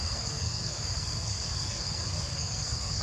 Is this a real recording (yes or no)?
no